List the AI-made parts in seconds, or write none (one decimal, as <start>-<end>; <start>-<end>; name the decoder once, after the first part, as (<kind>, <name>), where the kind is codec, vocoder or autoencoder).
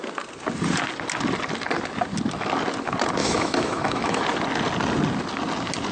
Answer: 3.2-4.2 (autoencoder, DAC-VAE)